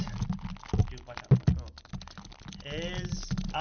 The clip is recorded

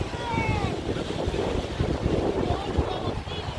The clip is remade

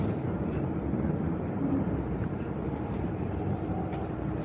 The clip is remade